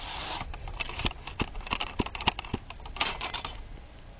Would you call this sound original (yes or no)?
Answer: yes